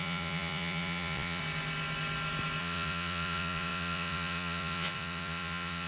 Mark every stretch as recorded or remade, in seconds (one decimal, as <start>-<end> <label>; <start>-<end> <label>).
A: 0.0-1.4 remade; 1.4-2.6 recorded; 2.6-5.9 remade